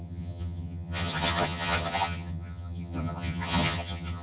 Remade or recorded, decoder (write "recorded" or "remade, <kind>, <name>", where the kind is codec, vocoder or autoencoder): remade, vocoder, HiFi-GAN